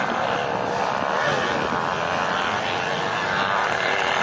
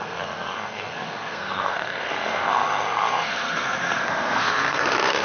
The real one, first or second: first